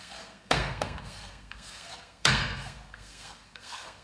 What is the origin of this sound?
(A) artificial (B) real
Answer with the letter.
A